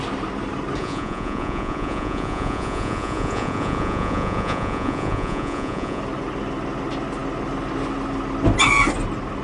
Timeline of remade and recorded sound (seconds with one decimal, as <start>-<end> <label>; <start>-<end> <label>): 0.0-0.8 recorded; 0.8-6.0 remade; 6.0-9.4 recorded

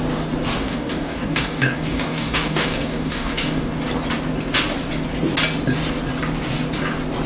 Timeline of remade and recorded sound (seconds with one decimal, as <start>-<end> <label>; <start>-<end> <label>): 0.0-0.6 recorded; 0.6-3.7 remade; 3.7-7.3 recorded

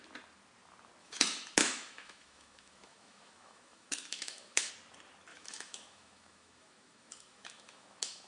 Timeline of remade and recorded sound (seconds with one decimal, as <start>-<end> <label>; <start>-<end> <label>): 0.0-1.0 recorded; 1.0-4.7 remade; 4.7-5.3 recorded; 5.3-8.3 remade

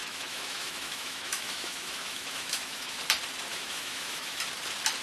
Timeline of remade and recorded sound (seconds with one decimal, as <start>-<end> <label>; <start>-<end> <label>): 0.0-3.0 remade; 3.0-3.5 recorded; 3.5-4.4 remade; 4.4-5.0 recorded

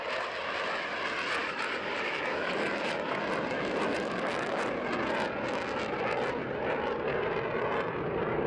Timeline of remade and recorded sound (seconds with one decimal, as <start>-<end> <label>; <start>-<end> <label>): 0.0-1.4 recorded; 1.4-3.2 remade; 3.2-3.9 recorded; 3.9-4.7 remade; 4.7-8.5 recorded